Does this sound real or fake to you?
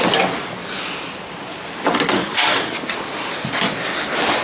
real